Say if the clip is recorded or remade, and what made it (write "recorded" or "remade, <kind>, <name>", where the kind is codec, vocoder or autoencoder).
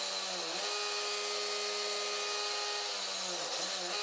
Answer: recorded